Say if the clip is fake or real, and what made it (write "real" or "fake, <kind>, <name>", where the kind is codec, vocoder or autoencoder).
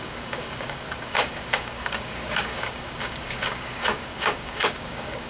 fake, codec, DAC